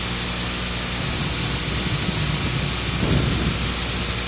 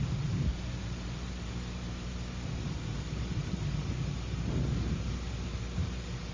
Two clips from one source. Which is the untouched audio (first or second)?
first